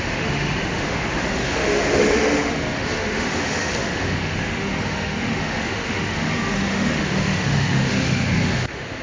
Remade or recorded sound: remade